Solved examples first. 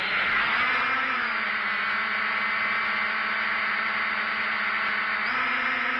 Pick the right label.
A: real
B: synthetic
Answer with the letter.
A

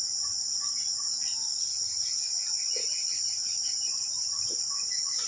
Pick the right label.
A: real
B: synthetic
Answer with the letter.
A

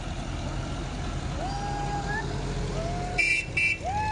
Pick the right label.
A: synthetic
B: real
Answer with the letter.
B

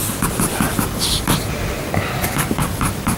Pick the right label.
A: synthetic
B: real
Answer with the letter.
B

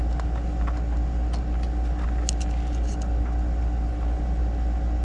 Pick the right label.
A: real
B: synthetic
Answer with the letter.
A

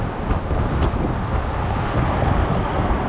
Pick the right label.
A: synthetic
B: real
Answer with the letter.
B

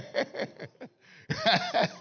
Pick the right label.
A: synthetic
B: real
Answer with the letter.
B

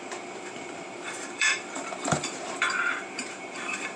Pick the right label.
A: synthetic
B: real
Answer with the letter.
A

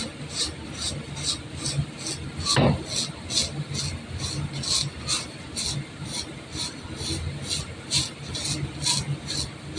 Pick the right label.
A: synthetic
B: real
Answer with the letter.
B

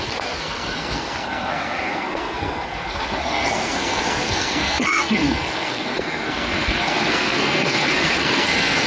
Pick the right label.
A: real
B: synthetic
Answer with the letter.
B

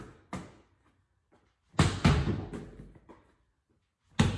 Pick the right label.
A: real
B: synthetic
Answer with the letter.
A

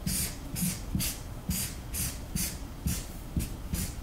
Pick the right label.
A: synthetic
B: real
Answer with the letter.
B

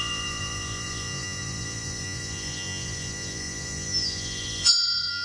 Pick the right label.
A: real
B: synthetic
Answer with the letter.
B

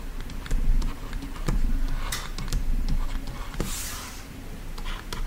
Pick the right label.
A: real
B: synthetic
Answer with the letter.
A